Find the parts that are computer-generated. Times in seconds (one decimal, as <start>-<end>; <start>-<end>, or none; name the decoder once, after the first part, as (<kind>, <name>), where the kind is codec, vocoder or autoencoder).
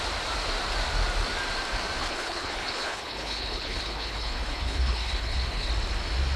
2.0-5.7 (codec, HILCodec)